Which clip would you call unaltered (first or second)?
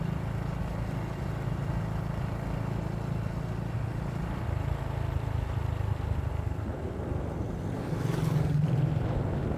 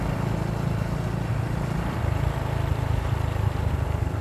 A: first